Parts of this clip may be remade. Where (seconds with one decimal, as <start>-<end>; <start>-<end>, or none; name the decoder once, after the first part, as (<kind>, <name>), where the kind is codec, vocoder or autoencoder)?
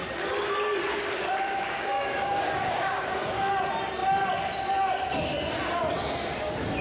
1.5-3.5 (codec, DAC)